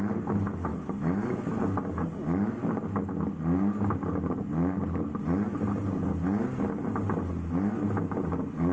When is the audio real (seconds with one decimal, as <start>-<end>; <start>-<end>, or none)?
0.0-0.7; 1.6-8.7